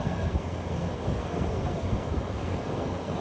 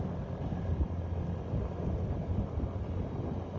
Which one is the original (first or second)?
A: second